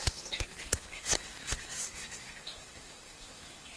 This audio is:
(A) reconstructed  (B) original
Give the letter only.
A